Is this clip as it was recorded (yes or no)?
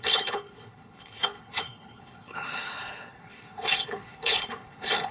no